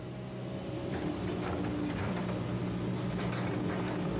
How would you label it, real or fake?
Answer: real